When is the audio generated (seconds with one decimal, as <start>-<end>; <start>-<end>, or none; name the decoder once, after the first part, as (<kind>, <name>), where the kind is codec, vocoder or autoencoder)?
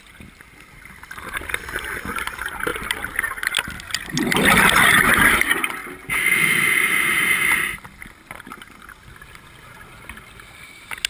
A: none